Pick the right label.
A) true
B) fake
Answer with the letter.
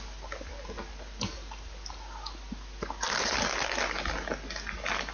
A